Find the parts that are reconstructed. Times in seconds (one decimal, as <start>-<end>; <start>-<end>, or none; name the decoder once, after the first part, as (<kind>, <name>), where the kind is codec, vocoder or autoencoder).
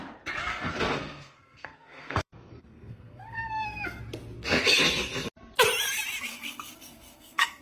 0.5-4.0 (codec, SNAC); 6.3-7.6